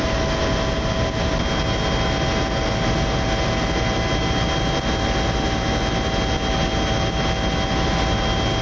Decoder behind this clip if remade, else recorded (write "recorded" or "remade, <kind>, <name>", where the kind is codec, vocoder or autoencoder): recorded